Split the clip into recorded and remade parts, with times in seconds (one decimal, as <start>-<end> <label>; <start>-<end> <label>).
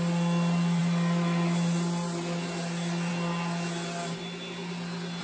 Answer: 0.0-5.2 recorded